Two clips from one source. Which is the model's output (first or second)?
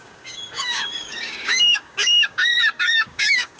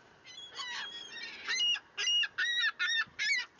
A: first